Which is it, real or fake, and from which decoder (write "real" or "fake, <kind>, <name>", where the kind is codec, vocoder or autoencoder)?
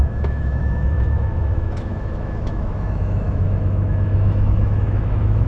fake, autoencoder, DAC-VAE